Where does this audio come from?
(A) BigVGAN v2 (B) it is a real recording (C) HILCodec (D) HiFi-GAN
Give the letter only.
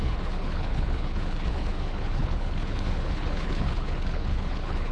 C